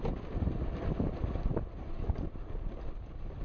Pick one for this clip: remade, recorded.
recorded